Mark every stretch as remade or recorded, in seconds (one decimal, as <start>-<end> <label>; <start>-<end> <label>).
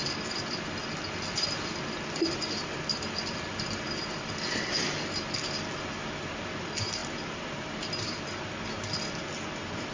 0.0-2.6 recorded; 2.6-4.7 remade; 4.7-7.0 recorded; 7.0-8.2 remade; 8.2-9.9 recorded